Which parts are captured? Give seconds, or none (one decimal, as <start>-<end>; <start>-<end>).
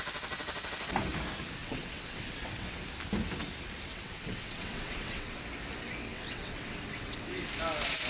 0.0-1.6; 2.8-3.9; 5.4-6.1; 7.3-8.1